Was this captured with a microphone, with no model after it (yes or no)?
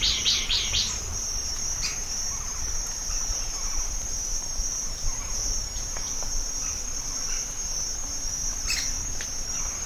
no